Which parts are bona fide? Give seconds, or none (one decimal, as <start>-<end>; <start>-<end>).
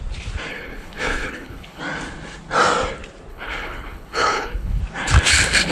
0.0-0.5; 1.8-3.3; 4.8-5.7